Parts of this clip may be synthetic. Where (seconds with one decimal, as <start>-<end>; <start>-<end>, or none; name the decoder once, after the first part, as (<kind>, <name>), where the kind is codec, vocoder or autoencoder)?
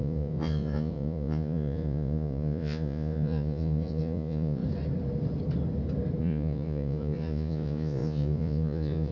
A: 0.0-4.6 (vocoder, Vocos); 6.2-9.1